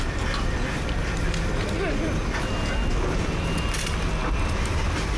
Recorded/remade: recorded